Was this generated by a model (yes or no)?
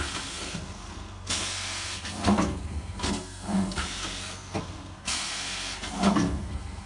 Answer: yes